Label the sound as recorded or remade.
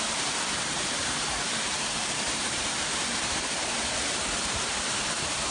remade